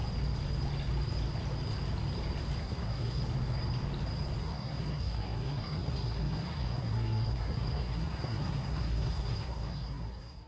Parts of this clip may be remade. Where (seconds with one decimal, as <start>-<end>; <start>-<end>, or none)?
2.6-3.2; 4.4-10.5